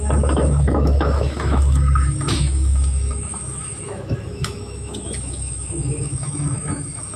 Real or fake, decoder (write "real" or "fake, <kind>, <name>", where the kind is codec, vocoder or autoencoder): fake, autoencoder, DAC-VAE